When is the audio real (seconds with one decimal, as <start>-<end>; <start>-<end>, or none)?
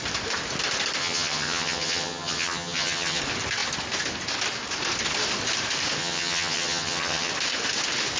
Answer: 0.0-1.0; 3.2-6.0; 7.3-8.2